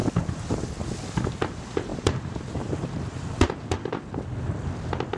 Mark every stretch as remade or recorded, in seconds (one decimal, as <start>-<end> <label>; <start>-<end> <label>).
0.0-5.2 recorded